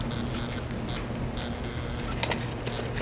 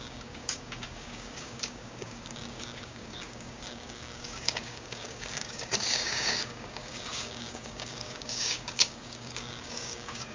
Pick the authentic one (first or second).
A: first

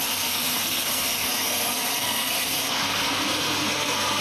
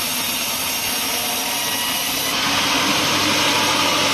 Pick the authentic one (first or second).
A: second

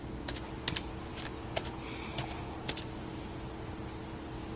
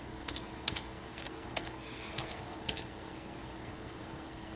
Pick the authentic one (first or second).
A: first